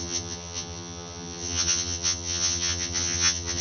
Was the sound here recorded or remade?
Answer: remade